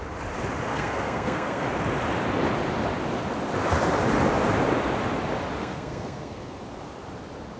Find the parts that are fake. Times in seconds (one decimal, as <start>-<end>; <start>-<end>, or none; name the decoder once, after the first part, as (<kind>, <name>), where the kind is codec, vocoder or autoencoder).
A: 0.7-1.7 (codec, SNAC); 5.6-6.6